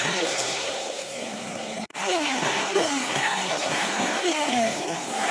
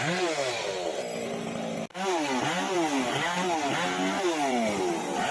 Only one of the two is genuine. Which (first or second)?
second